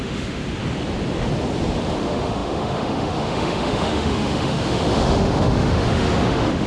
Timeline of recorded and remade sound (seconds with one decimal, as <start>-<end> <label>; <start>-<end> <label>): 0.0-0.4 remade; 0.4-2.0 recorded; 2.0-6.7 remade